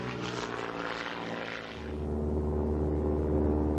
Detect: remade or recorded recorded